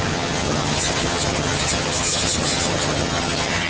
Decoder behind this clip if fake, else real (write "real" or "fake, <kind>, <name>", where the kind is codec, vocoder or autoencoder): fake, vocoder, HiFi-GAN